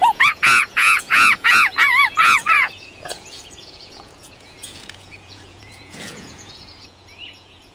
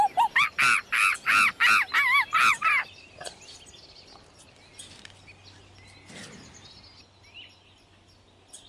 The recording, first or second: second